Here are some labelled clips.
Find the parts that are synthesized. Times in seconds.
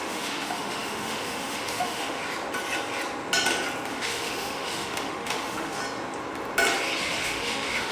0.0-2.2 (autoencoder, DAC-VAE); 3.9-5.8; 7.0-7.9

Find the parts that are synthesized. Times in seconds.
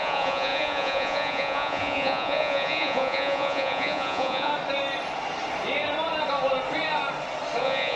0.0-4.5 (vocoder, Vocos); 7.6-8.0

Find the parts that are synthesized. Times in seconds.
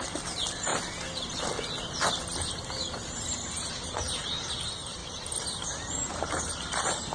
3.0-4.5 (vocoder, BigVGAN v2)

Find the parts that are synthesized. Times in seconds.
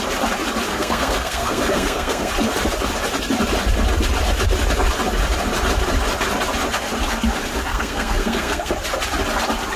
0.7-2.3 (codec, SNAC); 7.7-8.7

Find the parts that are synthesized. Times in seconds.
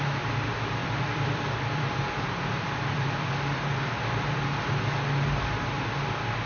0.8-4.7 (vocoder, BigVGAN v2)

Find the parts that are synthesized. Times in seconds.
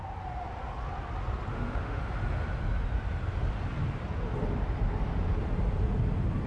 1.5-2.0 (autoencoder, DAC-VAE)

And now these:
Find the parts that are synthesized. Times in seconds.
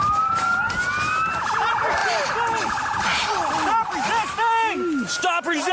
none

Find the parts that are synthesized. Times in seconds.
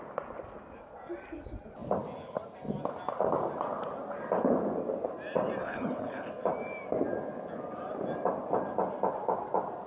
5.6-6.3 (codec, HILCodec)